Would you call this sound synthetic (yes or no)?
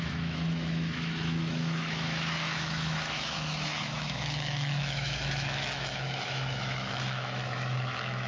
yes